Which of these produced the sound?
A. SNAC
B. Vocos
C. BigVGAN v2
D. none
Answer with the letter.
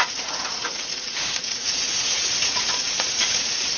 B